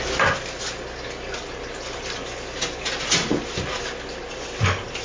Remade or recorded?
recorded